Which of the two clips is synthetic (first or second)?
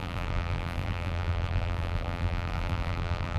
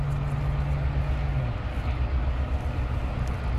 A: first